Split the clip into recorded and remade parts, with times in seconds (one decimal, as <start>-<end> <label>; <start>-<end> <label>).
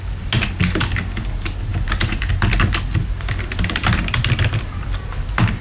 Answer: 0.0-5.6 recorded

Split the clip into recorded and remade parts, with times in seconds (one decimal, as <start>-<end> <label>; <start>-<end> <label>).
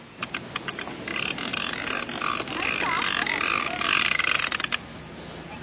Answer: 0.0-5.6 recorded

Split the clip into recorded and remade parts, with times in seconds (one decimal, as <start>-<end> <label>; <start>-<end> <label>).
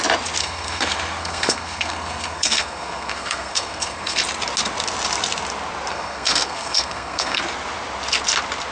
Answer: 0.0-0.4 recorded; 0.4-4.2 remade; 4.2-5.9 recorded; 5.9-7.4 remade; 7.4-8.7 recorded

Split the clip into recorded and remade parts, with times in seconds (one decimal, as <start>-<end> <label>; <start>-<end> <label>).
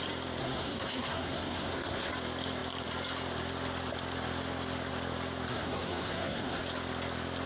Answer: 0.0-0.4 recorded; 0.4-2.1 remade; 2.1-5.5 recorded; 5.5-6.6 remade; 6.6-7.5 recorded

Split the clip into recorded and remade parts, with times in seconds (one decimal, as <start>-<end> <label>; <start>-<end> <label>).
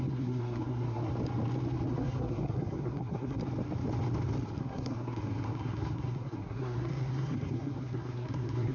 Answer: 0.0-1.1 remade; 1.1-1.9 recorded; 1.9-3.4 remade; 3.4-4.6 recorded; 4.6-8.7 remade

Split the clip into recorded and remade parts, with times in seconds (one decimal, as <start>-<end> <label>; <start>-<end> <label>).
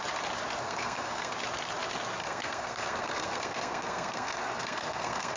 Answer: 0.0-0.6 recorded; 0.6-1.3 remade; 1.3-2.2 recorded; 2.2-5.4 remade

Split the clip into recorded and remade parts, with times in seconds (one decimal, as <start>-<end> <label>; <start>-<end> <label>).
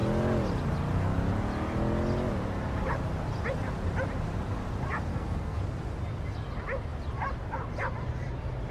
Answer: 0.0-5.1 recorded; 5.1-5.6 remade; 5.6-8.7 recorded